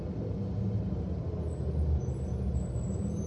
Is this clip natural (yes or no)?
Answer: yes